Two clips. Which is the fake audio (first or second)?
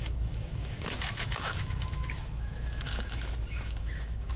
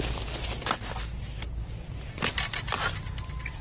first